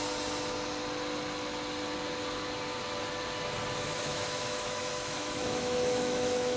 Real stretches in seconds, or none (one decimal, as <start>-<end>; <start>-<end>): 0.0-3.8